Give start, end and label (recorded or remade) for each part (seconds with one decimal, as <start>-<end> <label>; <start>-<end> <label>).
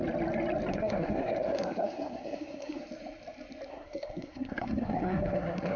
0.0-0.7 recorded; 0.7-2.8 remade; 2.8-3.7 recorded; 3.7-5.8 remade